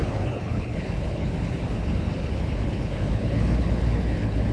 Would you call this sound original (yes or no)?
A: no